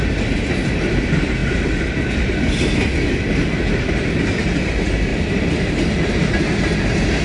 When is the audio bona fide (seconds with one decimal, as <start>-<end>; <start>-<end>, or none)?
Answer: 0.0-7.2